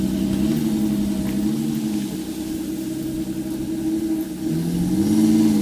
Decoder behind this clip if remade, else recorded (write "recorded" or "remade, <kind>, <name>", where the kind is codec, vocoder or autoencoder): recorded